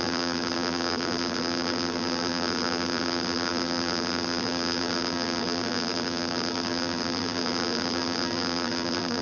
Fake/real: fake